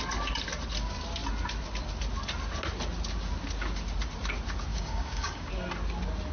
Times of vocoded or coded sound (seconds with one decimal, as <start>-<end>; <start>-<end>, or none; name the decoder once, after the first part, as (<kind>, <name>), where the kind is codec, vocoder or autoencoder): 4.7-5.5 (codec, DAC)